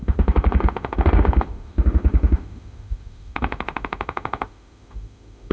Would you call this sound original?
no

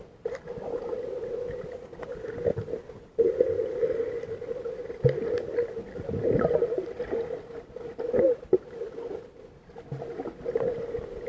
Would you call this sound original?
yes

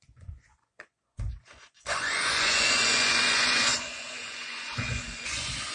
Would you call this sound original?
no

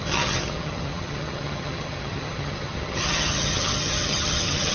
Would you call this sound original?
no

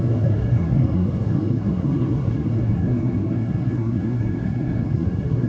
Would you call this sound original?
no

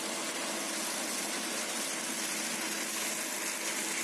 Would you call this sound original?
yes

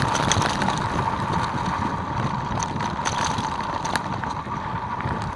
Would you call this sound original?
yes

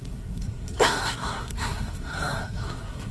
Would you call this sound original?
no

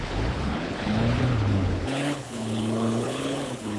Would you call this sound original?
no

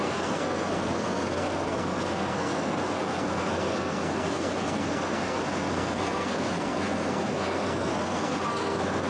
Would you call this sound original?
no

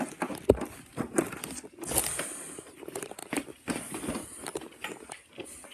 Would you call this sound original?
yes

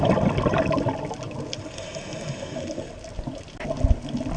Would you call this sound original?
yes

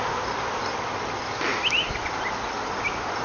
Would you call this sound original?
yes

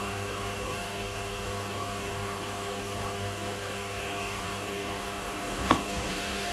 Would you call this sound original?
no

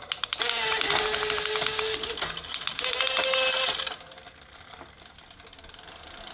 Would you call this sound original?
yes